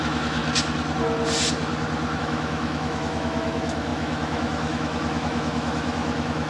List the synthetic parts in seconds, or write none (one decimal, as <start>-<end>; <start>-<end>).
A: 0.0-0.4; 2.2-6.5